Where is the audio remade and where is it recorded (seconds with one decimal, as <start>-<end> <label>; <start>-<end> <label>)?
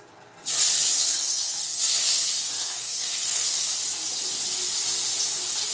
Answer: 0.0-1.0 recorded; 1.0-3.7 remade; 3.7-5.7 recorded